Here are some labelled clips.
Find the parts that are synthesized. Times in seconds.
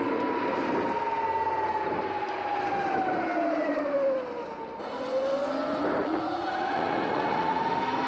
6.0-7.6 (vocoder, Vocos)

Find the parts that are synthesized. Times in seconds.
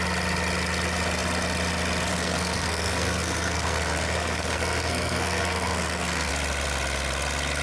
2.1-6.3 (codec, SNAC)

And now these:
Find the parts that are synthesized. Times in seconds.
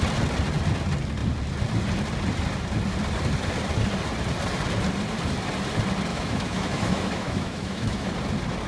6.1-8.1 (autoencoder, DAC-VAE)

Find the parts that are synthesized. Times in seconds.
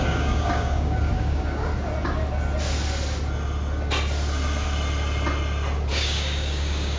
0.0-1.7 (codec, DAC); 5.9-7.0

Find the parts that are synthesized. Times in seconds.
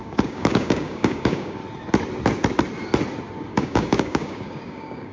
0.0-1.6 (codec, DAC); 3.5-5.1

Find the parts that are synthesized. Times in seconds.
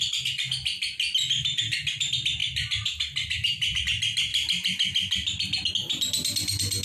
none